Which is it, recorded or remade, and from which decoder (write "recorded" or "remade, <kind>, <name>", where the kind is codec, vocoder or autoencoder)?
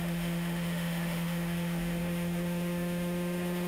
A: remade, autoencoder, DAC-VAE